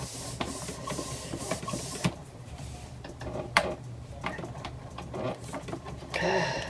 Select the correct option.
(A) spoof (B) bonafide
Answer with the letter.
A